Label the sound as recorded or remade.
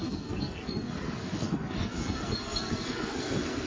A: remade